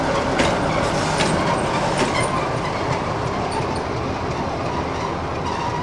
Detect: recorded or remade recorded